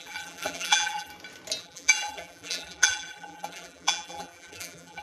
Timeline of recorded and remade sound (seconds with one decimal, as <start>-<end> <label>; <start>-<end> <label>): 0.0-1.1 remade; 1.1-1.6 recorded; 1.6-5.0 remade

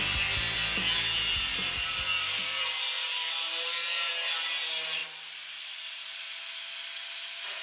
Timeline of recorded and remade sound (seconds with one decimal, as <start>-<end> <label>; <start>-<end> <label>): 0.0-1.5 recorded; 1.5-4.1 remade; 4.1-5.0 recorded; 5.0-6.1 remade; 6.1-7.6 recorded

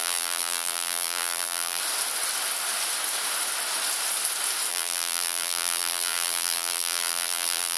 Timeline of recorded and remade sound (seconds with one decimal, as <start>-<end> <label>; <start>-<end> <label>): 0.0-1.8 remade; 1.8-4.7 recorded; 4.7-7.8 remade

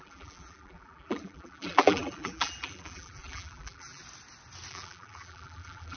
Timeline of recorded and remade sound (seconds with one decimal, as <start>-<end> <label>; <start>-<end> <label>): 0.0-4.0 remade; 4.0-4.7 recorded; 4.7-6.0 remade